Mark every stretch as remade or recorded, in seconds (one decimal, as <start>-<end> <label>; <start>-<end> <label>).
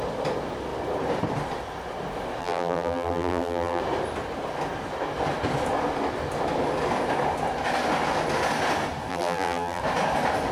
0.0-2.4 recorded; 2.4-3.8 remade; 3.8-9.1 recorded; 9.1-9.8 remade; 9.8-10.5 recorded